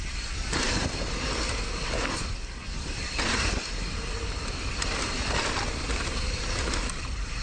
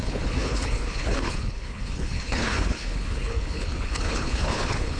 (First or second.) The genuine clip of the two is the first